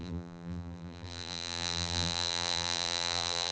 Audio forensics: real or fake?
fake